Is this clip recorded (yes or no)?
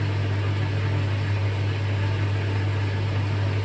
yes